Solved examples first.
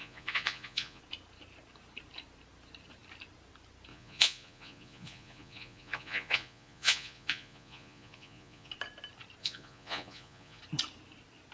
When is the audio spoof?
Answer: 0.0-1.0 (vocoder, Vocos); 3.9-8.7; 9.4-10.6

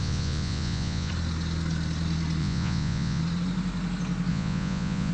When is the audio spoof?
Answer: 0.0-1.1 (vocoder, Vocos); 2.4-3.2; 4.3-5.1

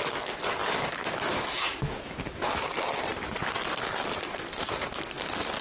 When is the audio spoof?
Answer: 0.6-2.6 (autoencoder, DAC-VAE)